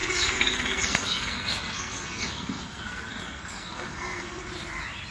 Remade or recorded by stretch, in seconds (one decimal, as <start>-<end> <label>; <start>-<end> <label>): 0.0-4.4 remade; 4.4-5.1 recorded